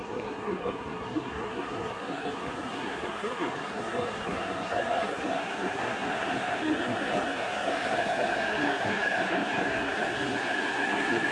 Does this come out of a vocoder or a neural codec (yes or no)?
yes